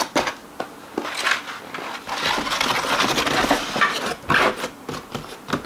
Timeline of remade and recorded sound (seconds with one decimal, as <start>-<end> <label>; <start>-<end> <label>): 0.0-5.7 recorded